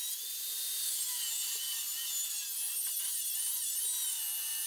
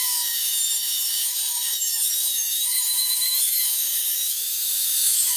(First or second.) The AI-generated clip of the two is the second